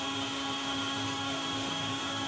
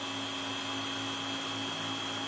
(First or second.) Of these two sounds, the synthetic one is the first